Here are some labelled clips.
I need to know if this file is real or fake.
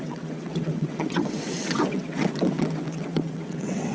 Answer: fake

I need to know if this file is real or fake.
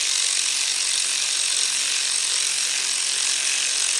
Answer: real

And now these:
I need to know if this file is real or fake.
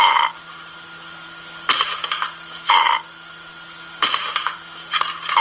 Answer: real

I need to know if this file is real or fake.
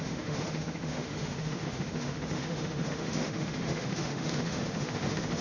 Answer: fake